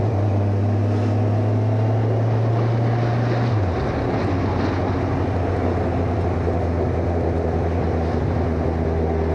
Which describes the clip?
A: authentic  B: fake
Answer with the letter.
A